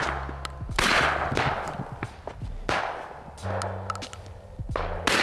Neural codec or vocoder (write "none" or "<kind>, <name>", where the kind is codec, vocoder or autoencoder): none